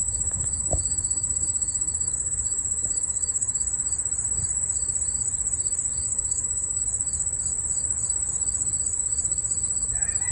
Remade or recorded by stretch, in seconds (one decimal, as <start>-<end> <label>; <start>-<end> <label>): 0.0-3.6 remade; 3.6-6.0 recorded; 6.0-6.8 remade; 6.8-10.3 recorded